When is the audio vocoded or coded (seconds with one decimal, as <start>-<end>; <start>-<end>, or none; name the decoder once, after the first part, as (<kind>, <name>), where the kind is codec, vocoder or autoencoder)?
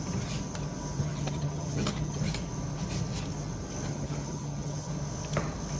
1.0-2.2 (vocoder, HiFi-GAN); 3.9-4.9